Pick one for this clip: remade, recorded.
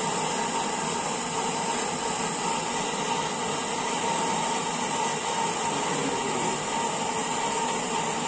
recorded